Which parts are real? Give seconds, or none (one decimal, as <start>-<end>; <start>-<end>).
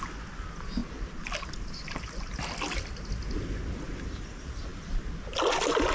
0.0-5.9